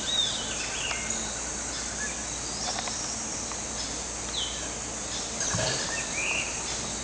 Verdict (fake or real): real